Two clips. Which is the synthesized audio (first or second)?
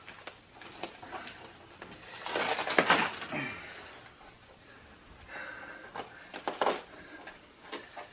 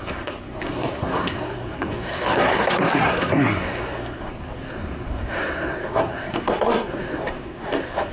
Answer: second